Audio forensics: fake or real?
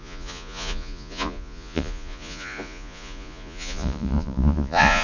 fake